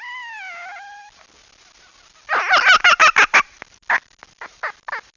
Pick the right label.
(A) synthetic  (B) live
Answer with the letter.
B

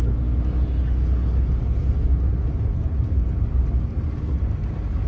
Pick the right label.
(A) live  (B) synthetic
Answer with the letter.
A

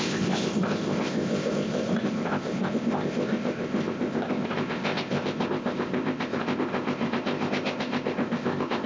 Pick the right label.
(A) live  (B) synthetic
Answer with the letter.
B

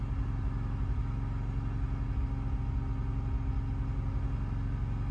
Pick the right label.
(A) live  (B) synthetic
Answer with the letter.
A